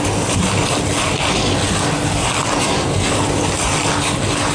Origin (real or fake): real